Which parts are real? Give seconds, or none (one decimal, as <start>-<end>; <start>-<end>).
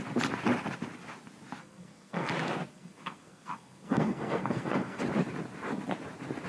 0.0-1.6; 2.3-2.7; 5.0-6.5